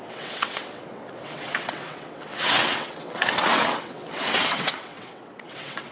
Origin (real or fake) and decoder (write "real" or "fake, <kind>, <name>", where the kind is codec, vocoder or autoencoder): fake, vocoder, WaveNeXt